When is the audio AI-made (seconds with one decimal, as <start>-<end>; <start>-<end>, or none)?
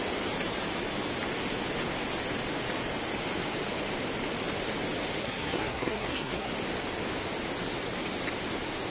5.2-6.5